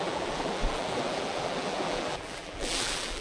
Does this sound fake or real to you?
fake